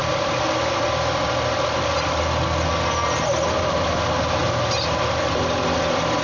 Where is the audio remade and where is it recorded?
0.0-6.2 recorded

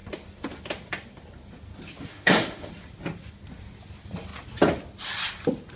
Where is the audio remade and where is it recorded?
0.0-2.1 recorded; 2.1-2.7 remade; 2.7-5.8 recorded

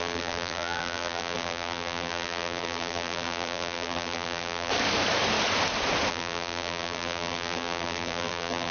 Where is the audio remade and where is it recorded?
0.0-4.7 remade; 4.7-6.1 recorded; 6.1-8.7 remade

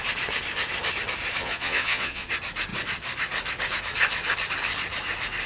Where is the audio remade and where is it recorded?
0.0-1.4 recorded; 1.4-2.3 remade; 2.3-5.5 recorded